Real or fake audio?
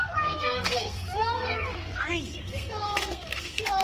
fake